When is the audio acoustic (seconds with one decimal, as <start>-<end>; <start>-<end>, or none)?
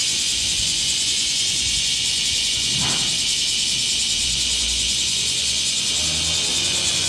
2.7-4.2; 5.9-6.5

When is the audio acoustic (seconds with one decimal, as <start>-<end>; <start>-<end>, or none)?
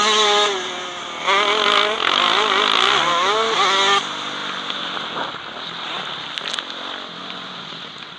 0.0-7.2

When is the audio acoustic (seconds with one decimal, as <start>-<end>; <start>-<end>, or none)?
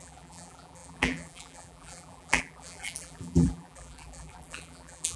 none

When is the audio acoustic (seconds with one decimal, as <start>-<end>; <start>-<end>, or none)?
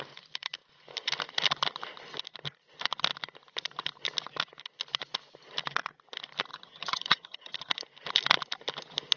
0.0-6.5; 7.7-9.2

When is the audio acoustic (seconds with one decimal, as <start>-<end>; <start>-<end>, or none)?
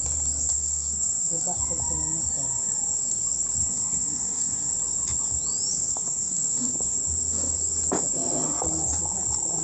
0.0-0.5; 1.3-3.6; 4.7-5.9; 7.0-9.6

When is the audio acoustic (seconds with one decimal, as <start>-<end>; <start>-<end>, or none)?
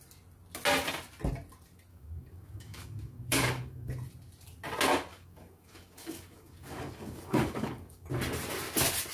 0.0-1.9; 3.9-5.1; 8.1-9.1